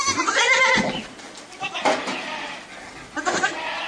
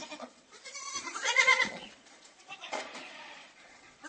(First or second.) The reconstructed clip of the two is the second